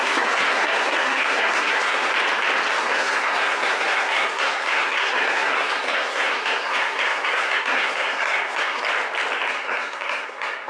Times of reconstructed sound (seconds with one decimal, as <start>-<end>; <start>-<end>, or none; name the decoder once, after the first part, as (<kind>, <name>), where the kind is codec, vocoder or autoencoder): 0.0-2.1 (codec, SNAC); 2.8-8.9; 9.5-10.7